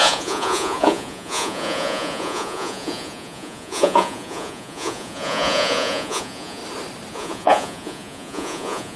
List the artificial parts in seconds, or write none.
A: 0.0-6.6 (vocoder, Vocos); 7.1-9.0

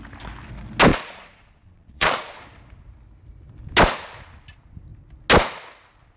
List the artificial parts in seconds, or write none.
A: 0.9-2.4 (vocoder, Vocos)

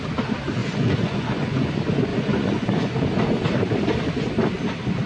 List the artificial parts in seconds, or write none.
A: 0.6-1.7 (vocoder, Vocos); 2.1-2.9

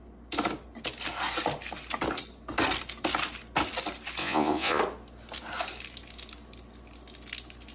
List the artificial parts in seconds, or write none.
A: 4.2-4.8 (vocoder, Vocos)